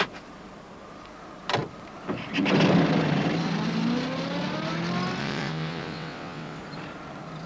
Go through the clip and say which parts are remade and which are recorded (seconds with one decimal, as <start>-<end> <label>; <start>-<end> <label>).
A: 0.0-5.2 recorded; 5.2-6.6 remade; 6.6-7.5 recorded